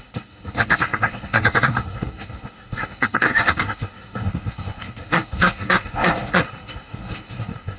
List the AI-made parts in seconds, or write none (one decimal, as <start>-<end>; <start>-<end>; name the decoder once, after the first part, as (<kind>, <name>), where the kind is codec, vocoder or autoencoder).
0.0-7.8 (codec, SNAC)